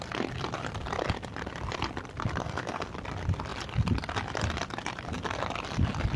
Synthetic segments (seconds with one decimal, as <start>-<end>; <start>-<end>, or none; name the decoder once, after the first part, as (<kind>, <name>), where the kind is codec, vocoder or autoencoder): 2.4-2.9 (codec, SNAC)